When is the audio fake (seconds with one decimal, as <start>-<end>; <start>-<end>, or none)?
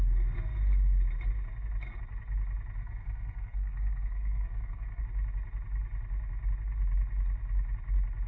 2.8-5.0